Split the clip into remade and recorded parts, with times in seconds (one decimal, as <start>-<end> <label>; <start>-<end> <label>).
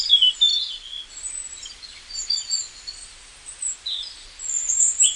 0.0-5.2 recorded